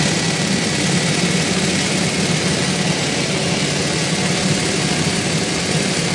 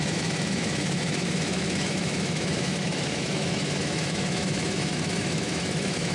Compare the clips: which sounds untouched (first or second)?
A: first